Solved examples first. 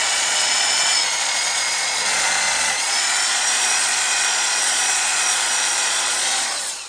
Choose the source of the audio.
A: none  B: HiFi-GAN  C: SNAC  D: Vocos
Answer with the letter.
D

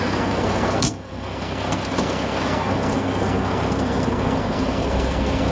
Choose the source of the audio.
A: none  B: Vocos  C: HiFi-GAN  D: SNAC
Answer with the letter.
D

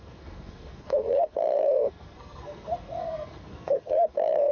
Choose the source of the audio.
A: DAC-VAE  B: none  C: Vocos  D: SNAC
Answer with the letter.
D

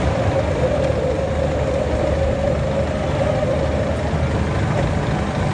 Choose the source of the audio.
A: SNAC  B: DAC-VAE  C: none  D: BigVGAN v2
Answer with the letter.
C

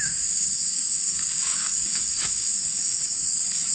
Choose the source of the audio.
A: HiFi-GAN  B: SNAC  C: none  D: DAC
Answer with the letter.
D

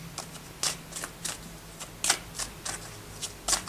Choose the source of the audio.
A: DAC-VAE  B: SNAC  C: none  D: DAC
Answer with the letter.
C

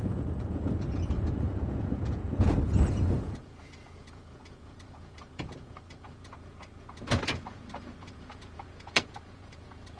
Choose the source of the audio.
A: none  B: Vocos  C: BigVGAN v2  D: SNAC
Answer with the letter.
B